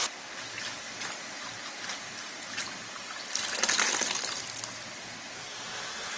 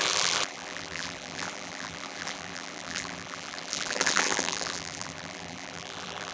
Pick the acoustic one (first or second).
first